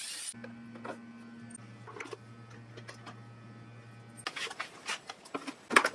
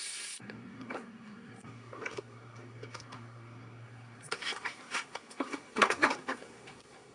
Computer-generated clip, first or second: second